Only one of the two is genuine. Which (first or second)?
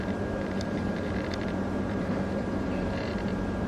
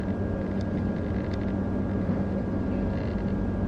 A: second